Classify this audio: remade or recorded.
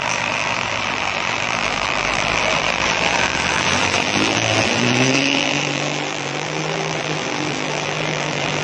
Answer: remade